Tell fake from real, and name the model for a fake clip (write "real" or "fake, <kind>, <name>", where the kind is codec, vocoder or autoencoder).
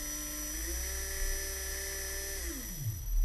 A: real